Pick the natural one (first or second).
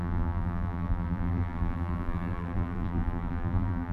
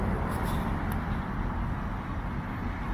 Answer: second